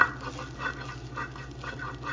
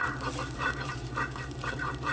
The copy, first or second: second